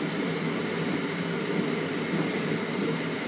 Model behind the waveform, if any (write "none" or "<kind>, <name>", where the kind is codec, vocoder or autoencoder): none